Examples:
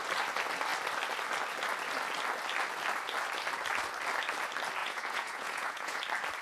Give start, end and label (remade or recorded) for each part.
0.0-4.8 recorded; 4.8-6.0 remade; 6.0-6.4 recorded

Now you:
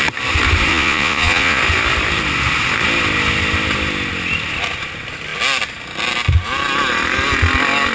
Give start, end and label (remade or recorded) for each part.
0.0-0.7 recorded; 0.7-1.6 remade; 1.6-7.9 recorded